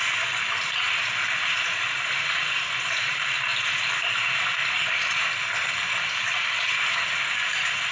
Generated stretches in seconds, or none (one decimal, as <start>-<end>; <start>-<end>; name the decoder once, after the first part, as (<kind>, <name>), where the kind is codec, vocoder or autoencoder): none